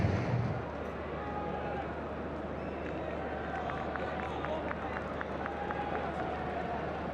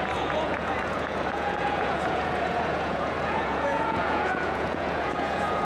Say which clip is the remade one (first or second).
second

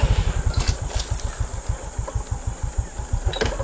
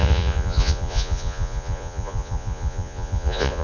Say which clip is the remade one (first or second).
second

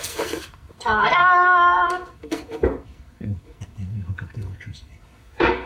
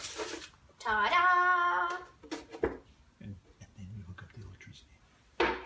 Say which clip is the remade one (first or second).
first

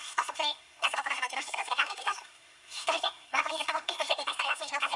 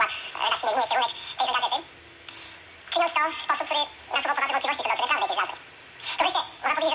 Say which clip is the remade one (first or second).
first